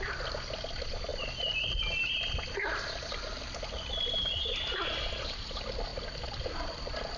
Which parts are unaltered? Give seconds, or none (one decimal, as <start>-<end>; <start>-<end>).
0.0-7.2